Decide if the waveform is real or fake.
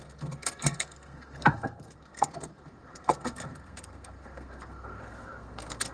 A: fake